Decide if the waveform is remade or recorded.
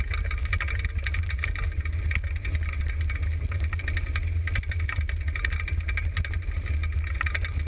recorded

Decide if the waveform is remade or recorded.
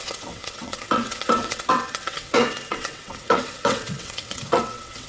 remade